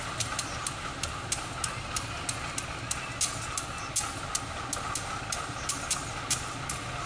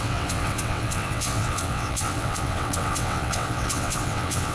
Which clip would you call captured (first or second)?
first